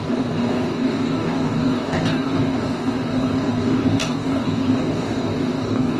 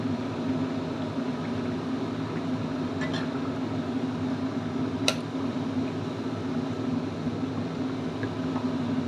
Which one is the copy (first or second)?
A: first